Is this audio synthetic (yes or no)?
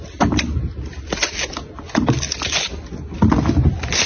no